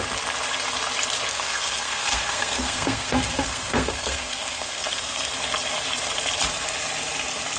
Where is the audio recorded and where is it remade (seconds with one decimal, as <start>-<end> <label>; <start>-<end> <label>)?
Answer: 0.0-1.3 recorded; 1.3-5.3 remade; 5.3-7.6 recorded